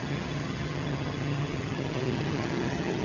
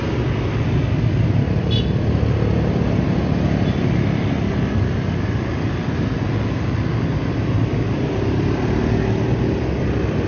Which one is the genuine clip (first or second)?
second